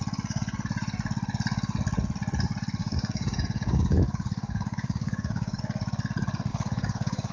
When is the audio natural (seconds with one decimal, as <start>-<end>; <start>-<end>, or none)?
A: 0.0-2.8; 5.6-6.5